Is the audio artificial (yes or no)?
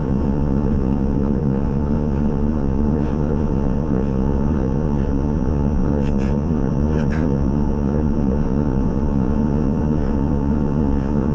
yes